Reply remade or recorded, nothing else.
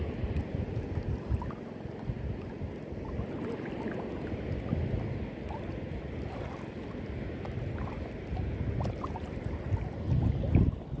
recorded